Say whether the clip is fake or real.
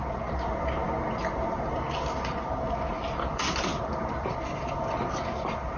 real